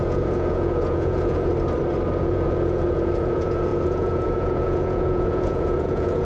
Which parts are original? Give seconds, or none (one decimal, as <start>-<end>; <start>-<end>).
1.5-2.2